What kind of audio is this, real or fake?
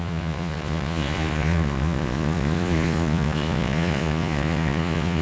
fake